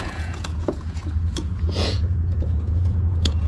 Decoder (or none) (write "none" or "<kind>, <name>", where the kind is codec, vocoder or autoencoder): vocoder, Vocos